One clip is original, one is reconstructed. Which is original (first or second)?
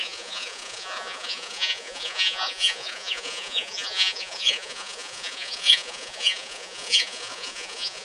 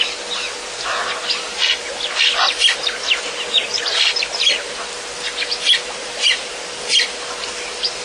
second